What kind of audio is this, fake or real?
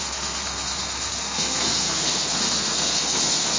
fake